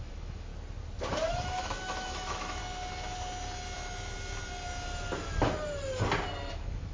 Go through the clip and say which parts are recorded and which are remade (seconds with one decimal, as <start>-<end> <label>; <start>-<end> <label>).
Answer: 0.0-0.5 remade; 0.5-1.3 recorded; 1.3-2.6 remade; 2.6-6.5 recorded; 6.5-6.9 remade